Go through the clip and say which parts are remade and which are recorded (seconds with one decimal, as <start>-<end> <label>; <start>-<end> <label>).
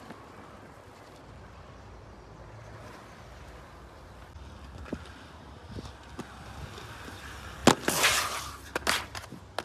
0.0-9.6 recorded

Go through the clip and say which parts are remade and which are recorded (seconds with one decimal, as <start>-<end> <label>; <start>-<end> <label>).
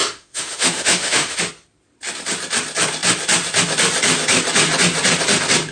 0.0-1.4 remade; 1.4-5.7 recorded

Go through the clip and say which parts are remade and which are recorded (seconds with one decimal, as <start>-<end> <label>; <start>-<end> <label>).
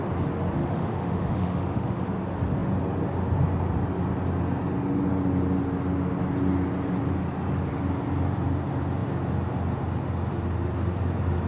0.0-0.6 recorded; 0.6-2.1 remade; 2.1-11.5 recorded